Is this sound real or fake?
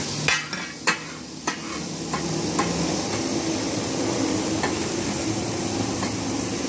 real